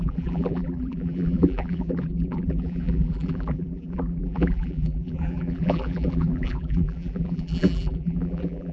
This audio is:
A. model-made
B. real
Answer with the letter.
A